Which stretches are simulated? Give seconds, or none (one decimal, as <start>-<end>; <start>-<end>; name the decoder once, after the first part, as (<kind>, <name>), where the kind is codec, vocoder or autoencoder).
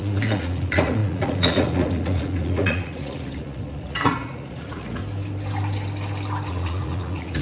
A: 0.0-5.0 (vocoder, Vocos); 6.5-7.4